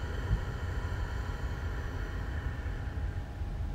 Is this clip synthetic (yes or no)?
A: no